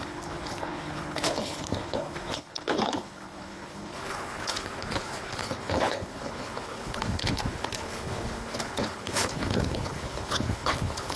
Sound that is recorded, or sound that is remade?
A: remade